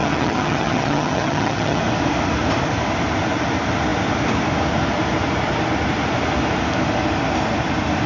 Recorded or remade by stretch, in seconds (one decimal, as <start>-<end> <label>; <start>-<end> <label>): 0.0-1.8 remade; 1.8-8.1 recorded

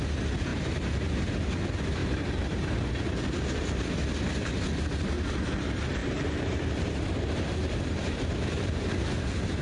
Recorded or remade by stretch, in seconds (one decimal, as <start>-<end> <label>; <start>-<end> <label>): 0.0-0.5 recorded; 0.5-1.5 remade; 1.5-2.0 recorded; 2.0-2.9 remade; 2.9-6.0 recorded; 6.0-9.1 remade; 9.1-9.6 recorded